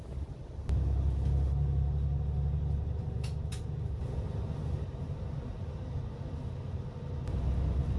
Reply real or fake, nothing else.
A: real